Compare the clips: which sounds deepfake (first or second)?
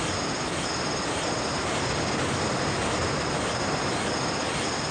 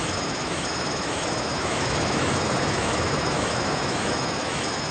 second